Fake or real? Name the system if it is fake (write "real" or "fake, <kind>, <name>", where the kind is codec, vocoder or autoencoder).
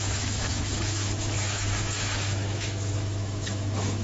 fake, autoencoder, DAC-VAE